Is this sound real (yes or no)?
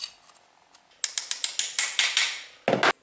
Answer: yes